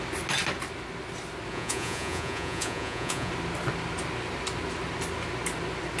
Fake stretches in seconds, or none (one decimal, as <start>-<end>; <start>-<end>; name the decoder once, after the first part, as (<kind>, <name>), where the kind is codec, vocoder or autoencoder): 1.5-3.3 (vocoder, Vocos)